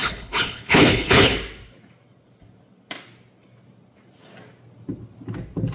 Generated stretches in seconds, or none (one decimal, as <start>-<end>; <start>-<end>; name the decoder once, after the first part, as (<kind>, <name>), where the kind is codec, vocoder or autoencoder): 0.0-1.3 (codec, HILCodec)